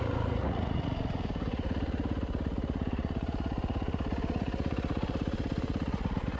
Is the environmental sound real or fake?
fake